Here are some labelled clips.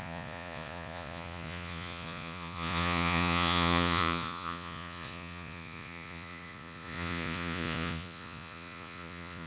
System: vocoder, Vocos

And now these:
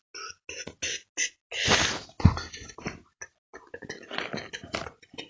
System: none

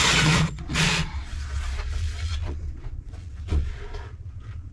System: vocoder, Vocos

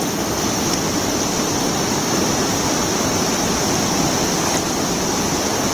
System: vocoder, BigVGAN v2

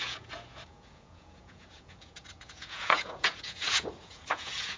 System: vocoder, Vocos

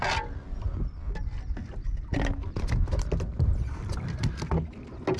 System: none